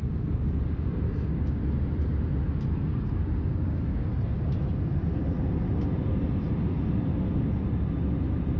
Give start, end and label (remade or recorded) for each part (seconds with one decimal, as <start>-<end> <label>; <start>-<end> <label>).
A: 0.0-1.6 remade; 1.6-2.7 recorded; 2.7-4.1 remade; 4.1-8.6 recorded